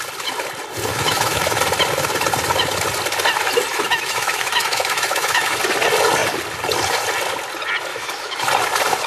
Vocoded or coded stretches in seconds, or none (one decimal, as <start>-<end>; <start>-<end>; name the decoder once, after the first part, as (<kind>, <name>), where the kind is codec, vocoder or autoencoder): 0.9-1.6 (autoencoder, DAC-VAE); 3.7-5.6; 7.9-8.5